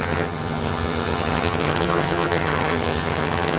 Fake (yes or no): yes